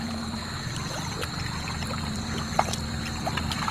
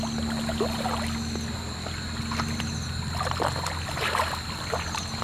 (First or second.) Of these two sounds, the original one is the second